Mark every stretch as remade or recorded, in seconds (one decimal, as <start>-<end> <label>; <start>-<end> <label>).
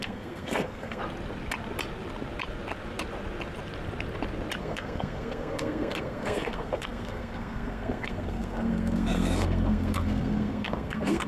0.0-1.0 remade; 1.0-4.6 recorded; 4.6-11.3 remade